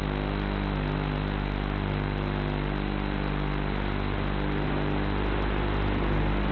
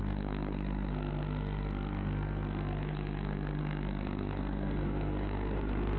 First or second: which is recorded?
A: first